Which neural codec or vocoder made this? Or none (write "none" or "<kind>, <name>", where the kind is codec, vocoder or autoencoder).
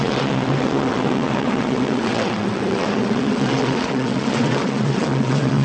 vocoder, WaveNeXt